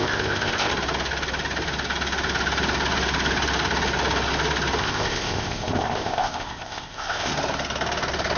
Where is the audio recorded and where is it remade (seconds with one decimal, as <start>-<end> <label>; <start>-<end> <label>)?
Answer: 0.0-0.7 remade; 0.7-4.8 recorded; 4.8-7.3 remade; 7.3-8.4 recorded